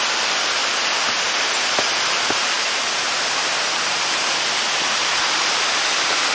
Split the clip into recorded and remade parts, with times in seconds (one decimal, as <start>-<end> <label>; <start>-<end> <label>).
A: 0.0-6.3 recorded